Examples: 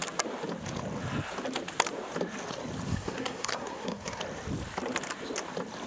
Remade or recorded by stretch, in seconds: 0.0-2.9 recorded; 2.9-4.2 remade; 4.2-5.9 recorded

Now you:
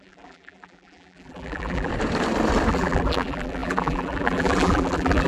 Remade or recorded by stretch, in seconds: 0.0-1.9 remade; 1.9-2.7 recorded; 2.7-5.3 remade

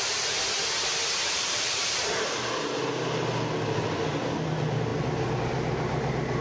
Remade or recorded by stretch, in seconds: 0.0-1.2 recorded; 1.2-2.4 remade; 2.4-6.4 recorded

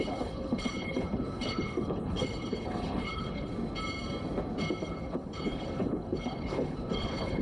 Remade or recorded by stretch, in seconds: 0.0-3.5 remade; 3.5-4.8 recorded; 4.8-7.4 remade